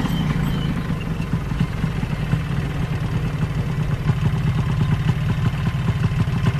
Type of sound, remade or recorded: recorded